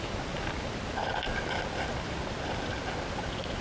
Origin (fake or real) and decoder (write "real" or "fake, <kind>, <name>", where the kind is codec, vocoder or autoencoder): real